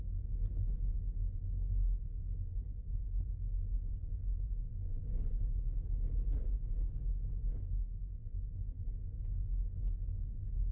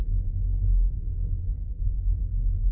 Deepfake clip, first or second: second